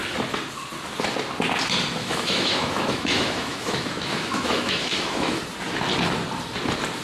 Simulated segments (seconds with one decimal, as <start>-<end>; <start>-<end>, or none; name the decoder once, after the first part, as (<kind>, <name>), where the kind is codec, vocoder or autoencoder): 2.0-5.4 (autoencoder, DAC-VAE)